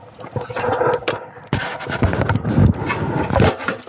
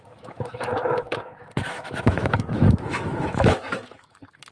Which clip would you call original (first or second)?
first